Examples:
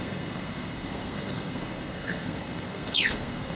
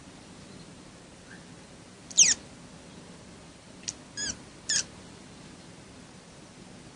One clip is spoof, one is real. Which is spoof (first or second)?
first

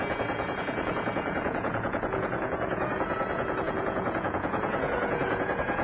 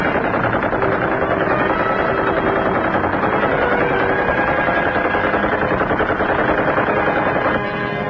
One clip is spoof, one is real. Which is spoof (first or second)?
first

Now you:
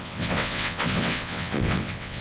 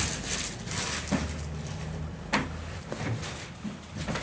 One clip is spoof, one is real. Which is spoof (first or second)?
first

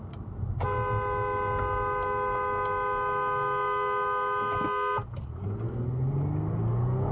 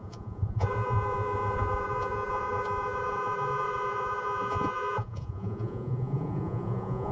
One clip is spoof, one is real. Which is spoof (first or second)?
second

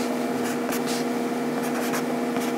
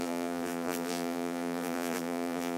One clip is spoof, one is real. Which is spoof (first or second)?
second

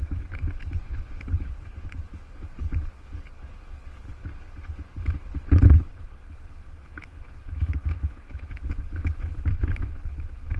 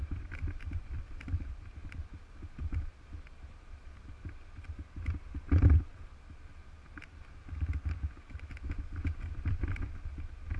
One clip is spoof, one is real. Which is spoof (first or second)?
first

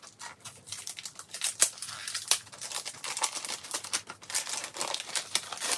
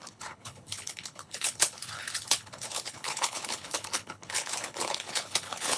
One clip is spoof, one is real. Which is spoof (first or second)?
second